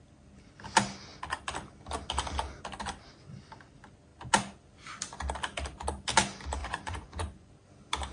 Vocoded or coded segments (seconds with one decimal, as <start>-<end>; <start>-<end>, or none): 6.6-7.5